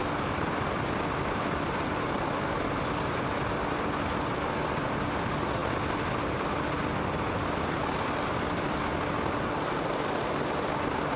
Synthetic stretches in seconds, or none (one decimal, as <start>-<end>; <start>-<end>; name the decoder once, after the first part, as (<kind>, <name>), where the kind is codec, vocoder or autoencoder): none